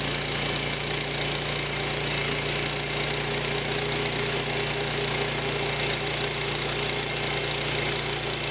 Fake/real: real